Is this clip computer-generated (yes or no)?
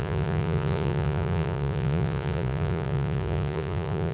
yes